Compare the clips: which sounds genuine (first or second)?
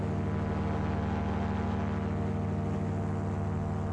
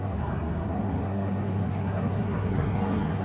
first